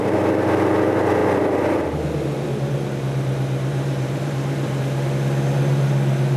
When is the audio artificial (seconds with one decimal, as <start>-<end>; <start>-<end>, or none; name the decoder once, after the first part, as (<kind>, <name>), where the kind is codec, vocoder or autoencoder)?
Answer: 3.7-4.8 (vocoder, BigVGAN v2)